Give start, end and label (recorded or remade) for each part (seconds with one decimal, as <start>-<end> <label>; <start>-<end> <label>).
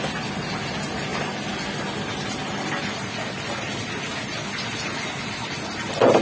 0.0-6.2 recorded